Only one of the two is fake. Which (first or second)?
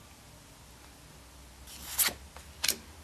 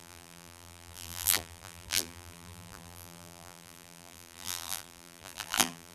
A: second